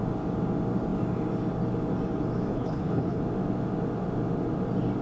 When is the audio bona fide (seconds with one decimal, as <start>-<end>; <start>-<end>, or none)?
0.0-2.5; 3.2-5.0